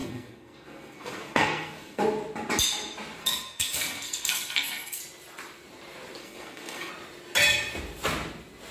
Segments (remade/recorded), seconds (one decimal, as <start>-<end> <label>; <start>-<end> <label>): 0.0-2.0 remade; 2.0-3.2 recorded; 3.2-5.0 remade; 5.0-6.2 recorded; 6.2-6.9 remade; 6.9-8.7 recorded